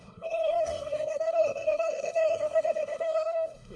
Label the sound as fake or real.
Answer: fake